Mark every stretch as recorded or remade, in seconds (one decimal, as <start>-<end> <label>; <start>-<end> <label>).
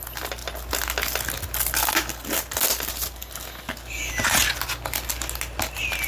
0.0-6.1 recorded